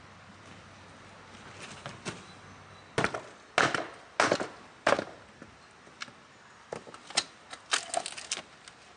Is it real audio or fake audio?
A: real